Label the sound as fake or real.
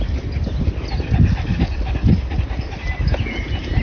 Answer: real